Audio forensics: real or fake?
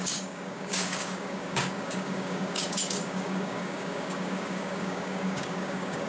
fake